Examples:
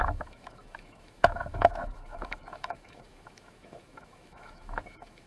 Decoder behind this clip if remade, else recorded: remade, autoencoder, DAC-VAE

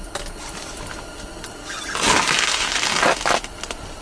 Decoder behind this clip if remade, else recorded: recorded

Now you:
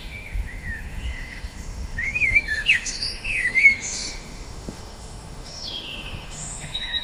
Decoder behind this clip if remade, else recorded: remade, autoencoder, DAC-VAE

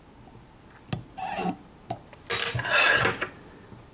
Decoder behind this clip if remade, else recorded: recorded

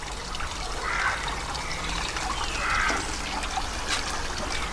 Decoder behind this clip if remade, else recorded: recorded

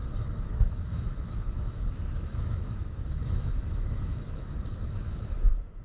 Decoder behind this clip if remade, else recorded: remade, autoencoder, DAC-VAE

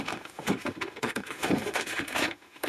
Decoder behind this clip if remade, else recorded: remade, autoencoder, DAC-VAE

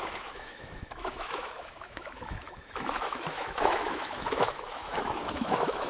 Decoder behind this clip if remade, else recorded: remade, autoencoder, DAC-VAE